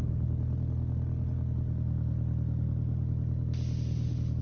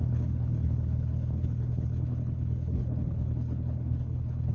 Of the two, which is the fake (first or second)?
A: second